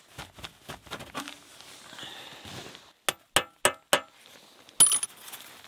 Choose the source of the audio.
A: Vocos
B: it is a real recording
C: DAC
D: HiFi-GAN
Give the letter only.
B